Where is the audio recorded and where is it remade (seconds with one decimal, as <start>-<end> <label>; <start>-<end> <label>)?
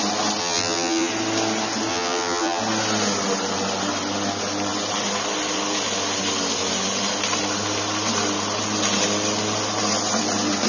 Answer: 0.0-0.4 recorded; 0.4-1.1 remade; 1.1-1.9 recorded; 1.9-2.6 remade; 2.6-10.7 recorded